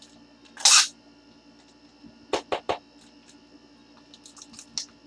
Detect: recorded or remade recorded